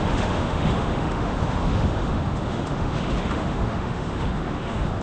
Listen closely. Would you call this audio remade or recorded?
remade